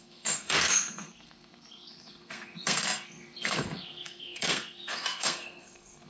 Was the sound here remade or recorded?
remade